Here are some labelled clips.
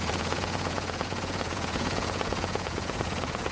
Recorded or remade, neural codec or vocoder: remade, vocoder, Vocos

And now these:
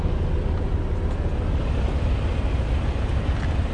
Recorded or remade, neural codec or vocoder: recorded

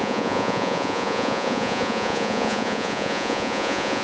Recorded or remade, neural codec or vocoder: remade, vocoder, Vocos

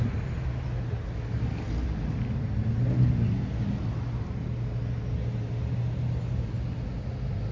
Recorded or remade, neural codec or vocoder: recorded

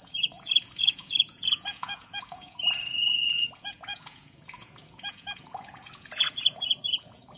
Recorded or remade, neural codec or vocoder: remade, vocoder, Vocos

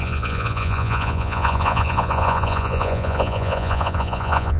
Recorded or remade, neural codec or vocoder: remade, vocoder, Vocos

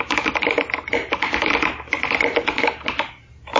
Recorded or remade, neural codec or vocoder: recorded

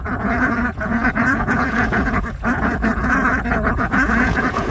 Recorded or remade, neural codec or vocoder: remade, vocoder, Vocos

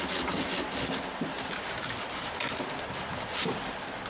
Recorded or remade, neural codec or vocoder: recorded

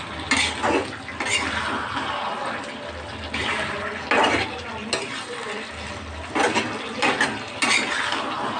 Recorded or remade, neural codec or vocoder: recorded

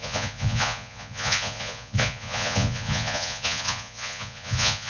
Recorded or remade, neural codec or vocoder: remade, vocoder, Vocos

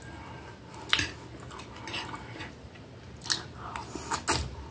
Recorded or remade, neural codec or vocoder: recorded